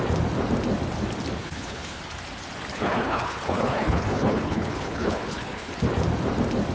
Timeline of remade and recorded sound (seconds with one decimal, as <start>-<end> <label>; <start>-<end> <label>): 0.0-1.4 recorded; 1.4-2.0 remade; 2.0-2.7 recorded; 2.7-5.7 remade; 5.7-6.7 recorded